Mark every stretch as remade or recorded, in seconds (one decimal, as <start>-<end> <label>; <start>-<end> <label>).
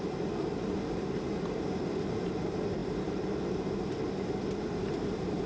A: 0.0-5.5 recorded